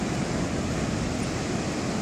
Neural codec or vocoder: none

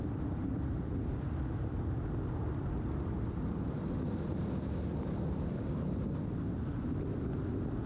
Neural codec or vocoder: vocoder, BigVGAN v2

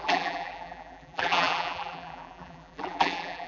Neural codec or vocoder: vocoder, BigVGAN v2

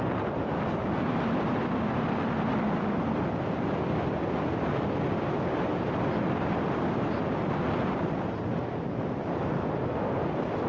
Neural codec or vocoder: none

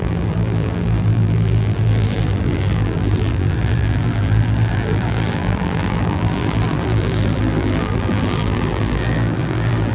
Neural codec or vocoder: vocoder, BigVGAN v2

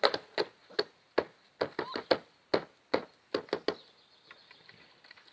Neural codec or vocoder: none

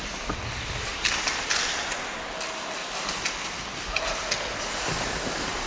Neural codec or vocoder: none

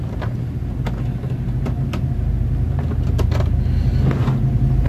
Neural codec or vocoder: none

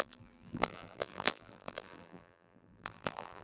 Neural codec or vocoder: vocoder, BigVGAN v2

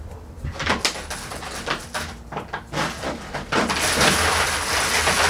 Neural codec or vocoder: none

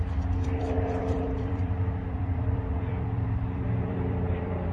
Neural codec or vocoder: vocoder, BigVGAN v2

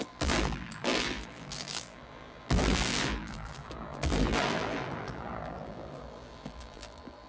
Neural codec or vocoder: vocoder, BigVGAN v2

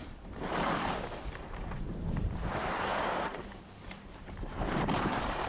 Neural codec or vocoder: vocoder, BigVGAN v2